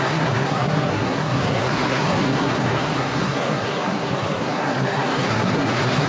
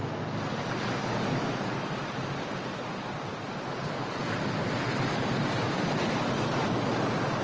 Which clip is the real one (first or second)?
second